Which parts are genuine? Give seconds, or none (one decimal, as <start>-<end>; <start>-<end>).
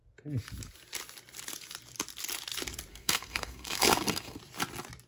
0.0-2.9; 4.4-5.1